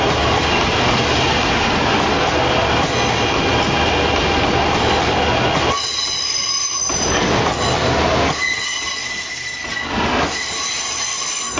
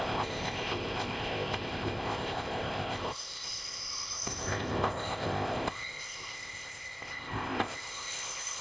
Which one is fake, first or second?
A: second